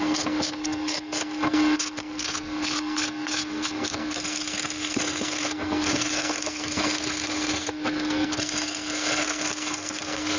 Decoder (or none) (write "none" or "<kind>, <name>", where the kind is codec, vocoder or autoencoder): codec, SNAC